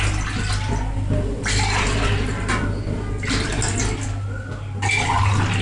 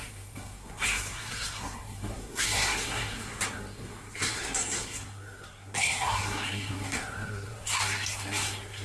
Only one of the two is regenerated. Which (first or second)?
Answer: second